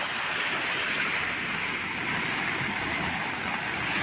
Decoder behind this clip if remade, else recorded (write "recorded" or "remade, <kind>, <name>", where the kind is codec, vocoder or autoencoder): recorded